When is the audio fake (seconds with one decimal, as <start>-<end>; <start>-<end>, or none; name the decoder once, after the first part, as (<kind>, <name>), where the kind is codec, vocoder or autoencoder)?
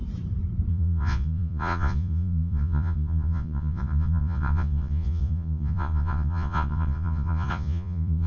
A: 0.7-8.3 (vocoder, Vocos)